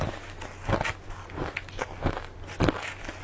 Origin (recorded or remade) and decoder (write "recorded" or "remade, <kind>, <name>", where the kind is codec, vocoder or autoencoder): recorded